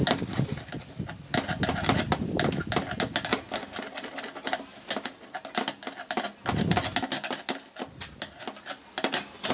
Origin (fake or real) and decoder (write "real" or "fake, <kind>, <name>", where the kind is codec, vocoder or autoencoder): real